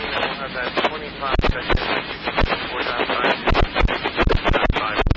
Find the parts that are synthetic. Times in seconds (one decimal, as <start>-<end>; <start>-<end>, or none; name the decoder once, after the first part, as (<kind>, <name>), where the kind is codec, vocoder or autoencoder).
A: none